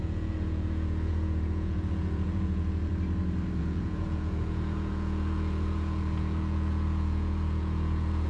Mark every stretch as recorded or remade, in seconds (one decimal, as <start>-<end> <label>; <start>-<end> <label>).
0.0-2.9 remade; 2.9-3.6 recorded; 3.6-8.3 remade